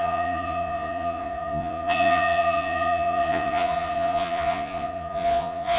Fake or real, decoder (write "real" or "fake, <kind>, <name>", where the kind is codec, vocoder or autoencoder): fake, vocoder, Vocos